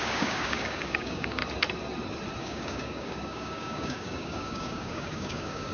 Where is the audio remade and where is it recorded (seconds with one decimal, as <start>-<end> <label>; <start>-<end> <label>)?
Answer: 0.0-1.4 remade; 1.4-2.4 recorded; 2.4-5.7 remade